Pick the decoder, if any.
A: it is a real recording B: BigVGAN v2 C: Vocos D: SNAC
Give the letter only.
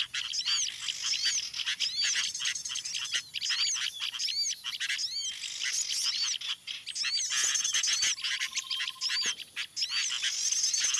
A